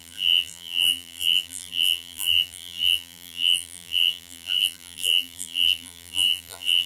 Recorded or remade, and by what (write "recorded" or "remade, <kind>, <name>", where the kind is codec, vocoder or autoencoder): remade, vocoder, BigVGAN v2